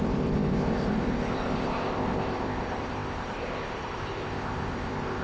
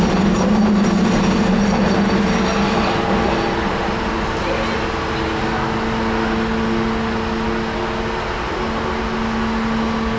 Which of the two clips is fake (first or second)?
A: first